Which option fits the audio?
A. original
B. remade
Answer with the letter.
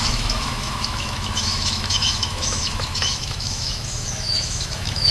B